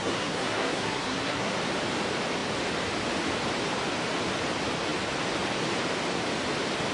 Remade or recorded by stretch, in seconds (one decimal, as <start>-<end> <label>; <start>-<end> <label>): 0.0-1.5 remade; 1.5-6.9 recorded